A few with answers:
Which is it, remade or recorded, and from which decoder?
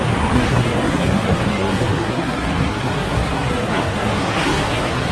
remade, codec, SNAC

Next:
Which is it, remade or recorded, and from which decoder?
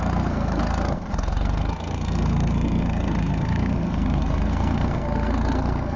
remade, codec, SNAC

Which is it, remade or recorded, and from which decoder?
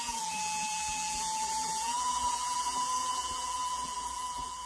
remade, vocoder, BigVGAN v2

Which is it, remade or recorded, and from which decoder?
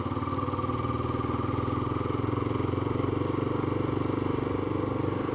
recorded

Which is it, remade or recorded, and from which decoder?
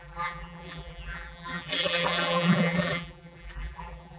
remade, vocoder, BigVGAN v2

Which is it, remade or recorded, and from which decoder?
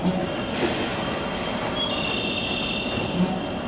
recorded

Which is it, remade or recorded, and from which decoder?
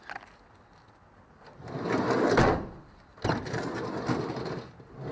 recorded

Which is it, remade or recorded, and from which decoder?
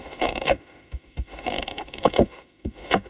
remade, autoencoder, DAC-VAE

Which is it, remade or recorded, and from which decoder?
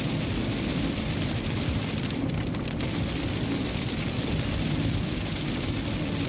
remade, vocoder, BigVGAN v2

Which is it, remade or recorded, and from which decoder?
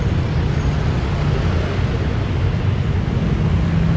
recorded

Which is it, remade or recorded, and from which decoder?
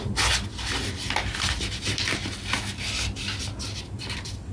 recorded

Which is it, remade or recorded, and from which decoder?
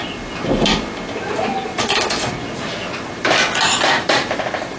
recorded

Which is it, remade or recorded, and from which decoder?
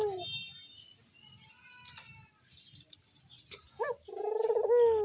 recorded